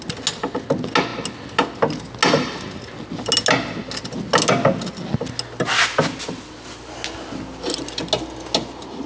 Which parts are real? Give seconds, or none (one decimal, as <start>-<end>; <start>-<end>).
0.0-9.1